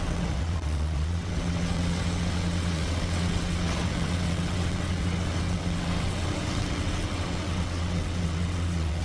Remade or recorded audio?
remade